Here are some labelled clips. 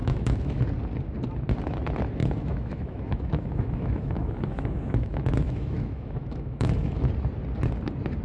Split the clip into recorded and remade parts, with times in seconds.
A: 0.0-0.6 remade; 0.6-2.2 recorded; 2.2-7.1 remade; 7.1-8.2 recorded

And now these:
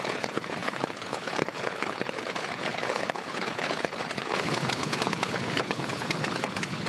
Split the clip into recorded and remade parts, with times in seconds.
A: 0.0-6.9 remade

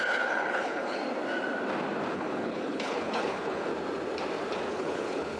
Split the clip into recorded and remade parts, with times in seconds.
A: 0.0-1.0 remade; 1.0-2.1 recorded; 2.1-3.7 remade; 3.7-4.7 recorded; 4.7-5.4 remade

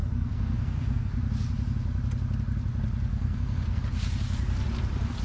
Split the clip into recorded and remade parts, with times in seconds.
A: 0.0-1.1 remade; 1.1-3.1 recorded; 3.1-3.8 remade; 3.8-5.2 recorded

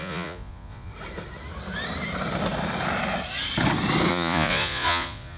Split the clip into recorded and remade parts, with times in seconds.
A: 0.0-0.9 remade; 0.9-4.1 recorded; 4.1-5.4 remade

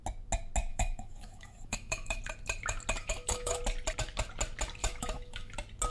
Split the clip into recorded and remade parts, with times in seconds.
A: 0.0-0.7 recorded; 0.7-2.2 remade; 2.2-3.0 recorded; 3.0-3.6 remade; 3.6-4.8 recorded; 4.8-5.5 remade; 5.5-5.9 recorded